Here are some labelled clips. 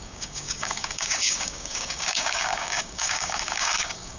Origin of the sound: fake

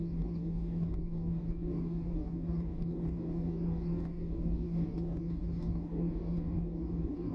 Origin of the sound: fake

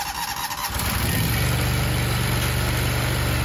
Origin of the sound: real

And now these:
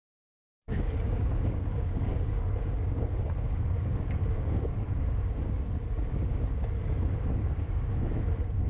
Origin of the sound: fake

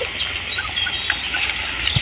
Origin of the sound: real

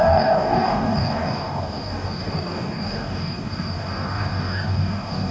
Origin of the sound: fake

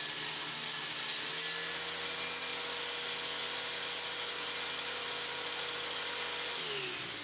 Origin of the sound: real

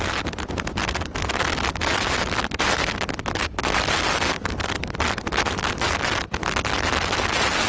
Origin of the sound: real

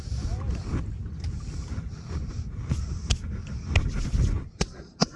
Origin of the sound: real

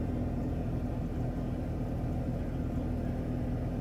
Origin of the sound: real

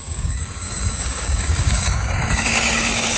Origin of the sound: fake